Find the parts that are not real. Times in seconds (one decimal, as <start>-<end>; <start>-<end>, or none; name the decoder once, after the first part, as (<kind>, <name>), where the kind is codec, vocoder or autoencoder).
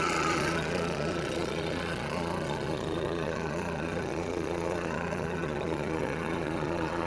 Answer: 0.0-7.1 (vocoder, Vocos)